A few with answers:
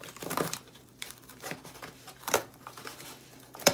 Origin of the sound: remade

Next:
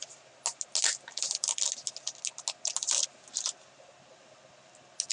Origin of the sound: recorded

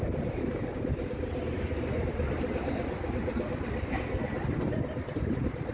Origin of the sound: remade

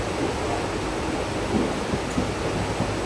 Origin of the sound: recorded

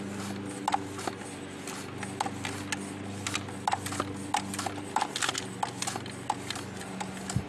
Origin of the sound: recorded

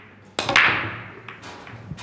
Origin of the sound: recorded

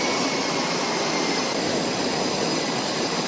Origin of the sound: recorded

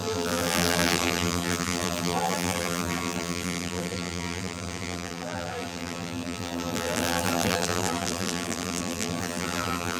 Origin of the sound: remade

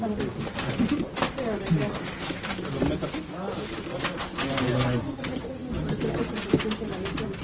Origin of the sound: recorded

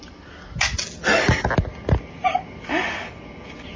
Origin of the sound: recorded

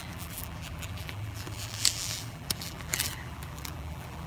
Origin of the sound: remade